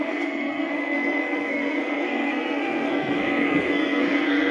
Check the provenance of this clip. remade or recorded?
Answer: remade